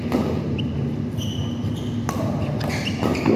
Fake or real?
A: real